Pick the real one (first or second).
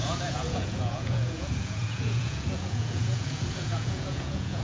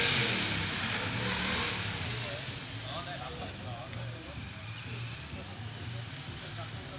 second